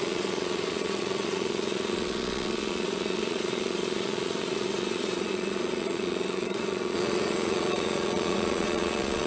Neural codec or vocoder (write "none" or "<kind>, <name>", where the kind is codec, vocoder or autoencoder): vocoder, Vocos